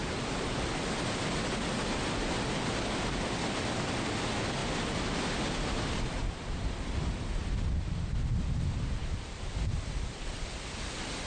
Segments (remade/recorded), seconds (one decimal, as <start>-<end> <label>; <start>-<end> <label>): 0.0-11.3 recorded